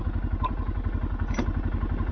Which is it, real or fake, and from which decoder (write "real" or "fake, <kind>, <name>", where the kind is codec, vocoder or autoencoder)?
real